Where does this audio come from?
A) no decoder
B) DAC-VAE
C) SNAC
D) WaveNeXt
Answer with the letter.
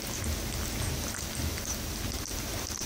A